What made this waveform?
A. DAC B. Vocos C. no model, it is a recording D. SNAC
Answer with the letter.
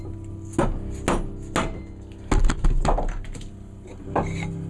C